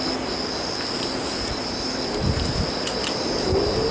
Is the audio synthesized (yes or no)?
no